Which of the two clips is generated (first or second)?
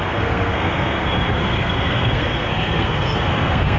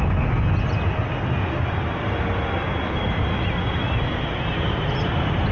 first